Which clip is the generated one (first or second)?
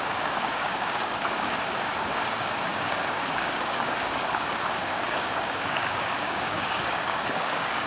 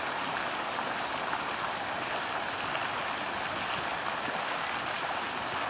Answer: first